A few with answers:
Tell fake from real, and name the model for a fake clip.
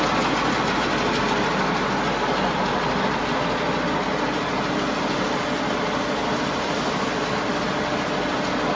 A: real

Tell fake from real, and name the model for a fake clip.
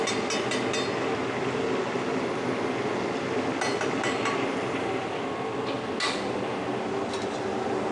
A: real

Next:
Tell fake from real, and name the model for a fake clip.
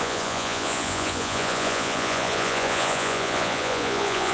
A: fake, vocoder, Vocos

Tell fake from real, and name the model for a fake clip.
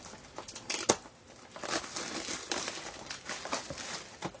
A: real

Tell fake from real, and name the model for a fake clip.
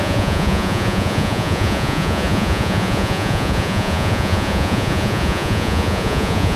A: fake, vocoder, Vocos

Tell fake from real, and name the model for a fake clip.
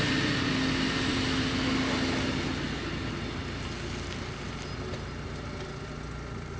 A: real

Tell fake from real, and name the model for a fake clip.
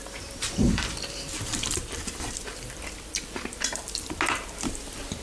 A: fake, vocoder, BigVGAN v2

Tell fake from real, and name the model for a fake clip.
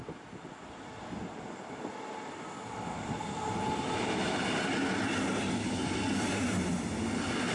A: real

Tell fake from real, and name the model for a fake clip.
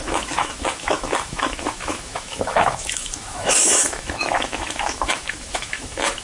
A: fake, autoencoder, DAC-VAE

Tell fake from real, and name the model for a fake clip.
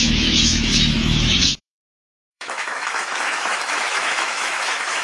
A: fake, autoencoder, DAC-VAE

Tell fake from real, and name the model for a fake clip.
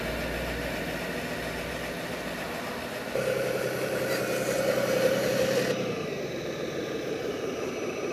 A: real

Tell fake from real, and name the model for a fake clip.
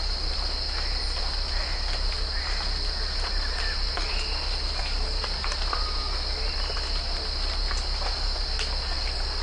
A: real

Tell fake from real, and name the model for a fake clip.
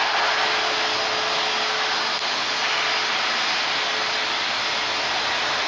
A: real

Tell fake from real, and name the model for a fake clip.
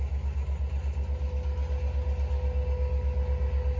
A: real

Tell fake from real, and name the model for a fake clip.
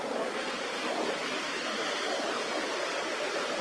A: real